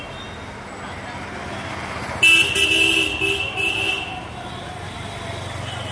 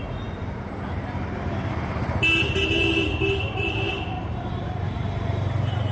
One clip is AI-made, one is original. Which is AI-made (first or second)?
second